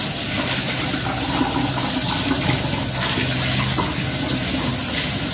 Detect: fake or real real